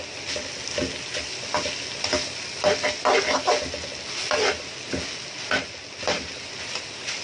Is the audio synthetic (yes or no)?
no